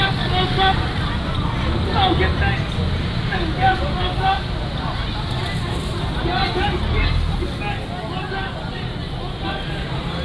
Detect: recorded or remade recorded